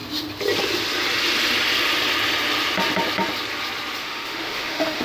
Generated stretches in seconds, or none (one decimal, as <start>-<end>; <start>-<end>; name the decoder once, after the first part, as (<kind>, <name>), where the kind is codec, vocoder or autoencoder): 4.0-5.0 (autoencoder, DAC-VAE)